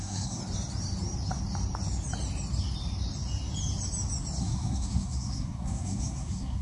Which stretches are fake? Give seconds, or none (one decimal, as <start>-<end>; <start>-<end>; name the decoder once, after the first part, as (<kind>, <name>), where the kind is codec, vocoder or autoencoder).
0.0-0.4 (codec, SNAC); 4.4-6.6